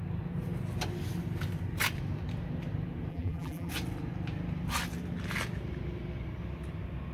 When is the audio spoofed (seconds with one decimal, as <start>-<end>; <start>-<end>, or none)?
3.1-3.7